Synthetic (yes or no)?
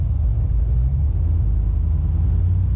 no